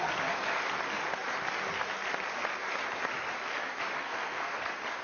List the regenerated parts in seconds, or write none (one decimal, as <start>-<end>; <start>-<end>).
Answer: 4.0-4.6